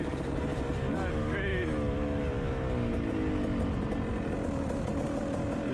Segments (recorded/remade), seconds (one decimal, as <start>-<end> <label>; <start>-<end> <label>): 0.0-5.7 recorded

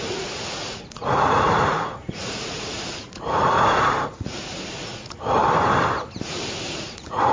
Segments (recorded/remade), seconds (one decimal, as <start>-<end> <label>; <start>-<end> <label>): 0.0-5.4 remade; 5.4-6.7 recorded; 6.7-7.3 remade

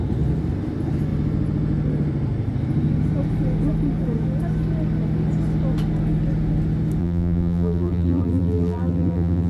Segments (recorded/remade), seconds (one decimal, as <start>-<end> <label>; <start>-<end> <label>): 0.0-7.0 recorded; 7.0-9.5 remade

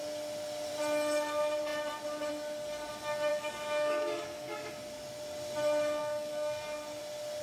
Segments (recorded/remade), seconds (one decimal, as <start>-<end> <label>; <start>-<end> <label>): 0.0-3.3 recorded; 3.3-4.7 remade; 4.7-6.0 recorded; 6.0-7.0 remade; 7.0-7.4 recorded

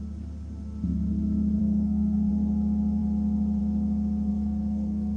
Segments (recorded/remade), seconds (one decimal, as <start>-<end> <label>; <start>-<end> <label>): 0.0-1.6 recorded; 1.6-2.3 remade; 2.3-4.3 recorded; 4.3-5.2 remade

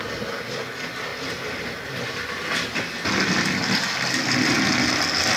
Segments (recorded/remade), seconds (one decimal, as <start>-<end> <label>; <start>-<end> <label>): 0.0-5.4 recorded